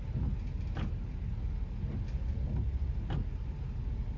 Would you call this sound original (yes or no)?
yes